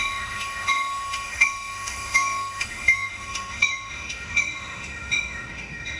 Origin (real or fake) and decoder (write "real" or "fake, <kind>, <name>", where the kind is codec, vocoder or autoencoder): fake, autoencoder, DAC-VAE